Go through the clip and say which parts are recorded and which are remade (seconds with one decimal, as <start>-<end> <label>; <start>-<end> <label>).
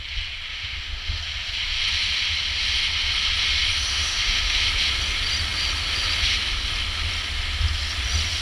0.0-0.5 recorded; 0.5-1.2 remade; 1.2-3.9 recorded; 3.9-4.6 remade; 4.6-8.4 recorded